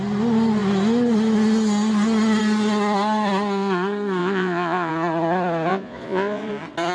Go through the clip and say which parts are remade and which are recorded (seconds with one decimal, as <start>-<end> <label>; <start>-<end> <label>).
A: 0.0-4.2 recorded; 4.2-4.9 remade; 4.9-5.7 recorded; 5.7-6.5 remade; 6.5-6.9 recorded